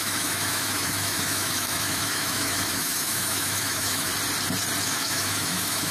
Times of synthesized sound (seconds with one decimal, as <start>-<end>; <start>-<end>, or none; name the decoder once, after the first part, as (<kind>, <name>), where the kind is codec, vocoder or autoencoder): 0.0-4.1 (autoencoder, DAC-VAE); 4.8-5.9